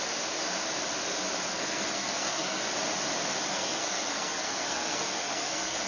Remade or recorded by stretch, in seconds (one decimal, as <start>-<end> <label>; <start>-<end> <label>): 0.0-1.5 recorded; 1.5-2.6 remade; 2.6-3.5 recorded; 3.5-5.9 remade